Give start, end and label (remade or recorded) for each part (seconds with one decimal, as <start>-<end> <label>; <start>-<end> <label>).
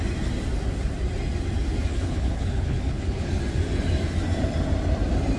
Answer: 0.0-1.9 recorded; 1.9-3.4 remade; 3.4-5.4 recorded